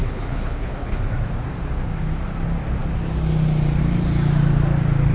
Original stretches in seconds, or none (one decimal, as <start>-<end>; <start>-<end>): 1.0-5.1